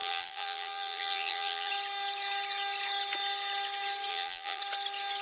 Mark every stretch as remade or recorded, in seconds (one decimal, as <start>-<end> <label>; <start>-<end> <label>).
0.0-1.7 remade; 1.7-4.1 recorded; 4.1-4.6 remade; 4.6-5.2 recorded